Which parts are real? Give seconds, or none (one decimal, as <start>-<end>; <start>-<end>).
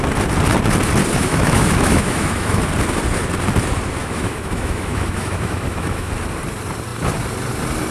0.0-1.2; 2.7-4.0; 6.1-7.9